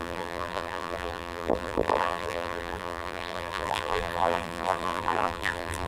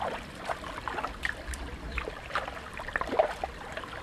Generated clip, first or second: first